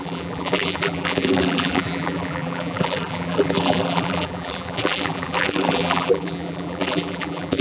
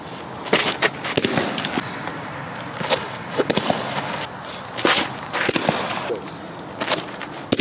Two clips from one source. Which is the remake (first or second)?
first